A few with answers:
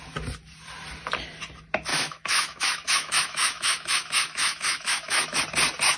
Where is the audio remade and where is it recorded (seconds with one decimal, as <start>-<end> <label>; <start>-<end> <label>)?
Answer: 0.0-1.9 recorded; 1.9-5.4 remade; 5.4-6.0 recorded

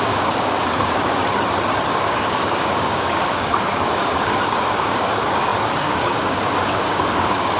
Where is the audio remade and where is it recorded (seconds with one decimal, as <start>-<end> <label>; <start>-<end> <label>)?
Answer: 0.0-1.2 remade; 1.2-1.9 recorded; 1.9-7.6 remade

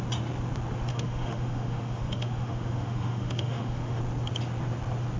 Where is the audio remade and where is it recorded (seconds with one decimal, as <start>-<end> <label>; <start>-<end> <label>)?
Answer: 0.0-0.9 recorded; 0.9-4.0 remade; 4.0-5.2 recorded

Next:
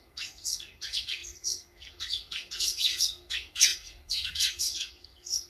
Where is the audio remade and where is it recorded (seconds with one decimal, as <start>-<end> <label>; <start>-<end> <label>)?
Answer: 0.0-5.5 remade

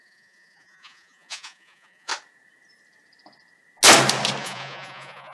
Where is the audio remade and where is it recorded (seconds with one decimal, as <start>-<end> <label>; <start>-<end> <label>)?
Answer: 0.0-2.1 remade; 2.1-4.4 recorded; 4.4-5.3 remade

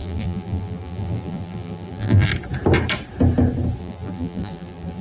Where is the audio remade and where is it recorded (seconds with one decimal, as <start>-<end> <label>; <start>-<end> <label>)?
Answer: 0.0-2.3 remade; 2.3-3.8 recorded; 3.8-5.0 remade

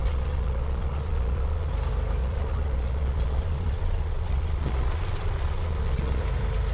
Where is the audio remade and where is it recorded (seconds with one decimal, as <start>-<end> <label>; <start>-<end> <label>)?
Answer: 0.0-1.7 remade; 1.7-2.2 recorded; 2.2-6.2 remade; 6.2-6.7 recorded